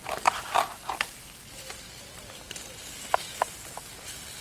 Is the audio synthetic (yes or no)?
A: no